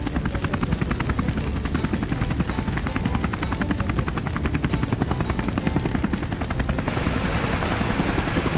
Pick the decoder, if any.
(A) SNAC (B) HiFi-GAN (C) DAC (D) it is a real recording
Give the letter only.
D